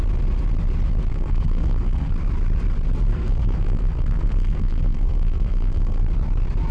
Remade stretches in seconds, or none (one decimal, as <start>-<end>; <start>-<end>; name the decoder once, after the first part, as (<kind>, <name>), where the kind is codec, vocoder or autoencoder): 1.1-2.1 (codec, SNAC); 3.1-6.0